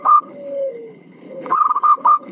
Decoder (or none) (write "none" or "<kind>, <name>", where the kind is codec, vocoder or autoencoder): codec, HILCodec